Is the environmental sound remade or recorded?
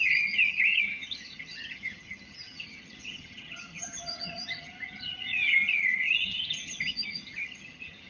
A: remade